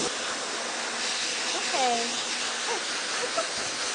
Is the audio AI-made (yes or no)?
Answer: no